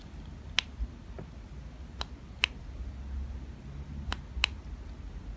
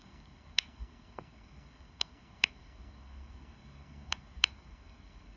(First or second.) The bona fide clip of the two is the first